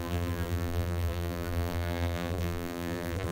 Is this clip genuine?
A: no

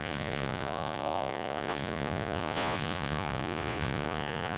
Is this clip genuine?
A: no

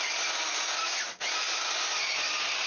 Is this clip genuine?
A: yes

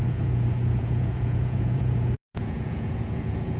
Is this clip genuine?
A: no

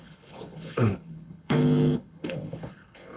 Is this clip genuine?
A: no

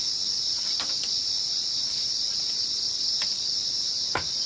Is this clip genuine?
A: yes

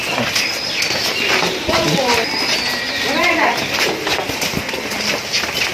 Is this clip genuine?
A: yes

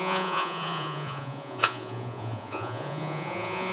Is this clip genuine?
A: no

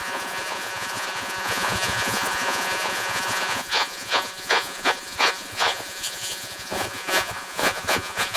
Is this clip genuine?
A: no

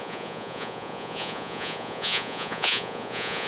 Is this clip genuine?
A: no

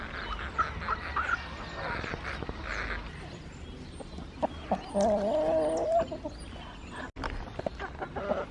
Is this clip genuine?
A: yes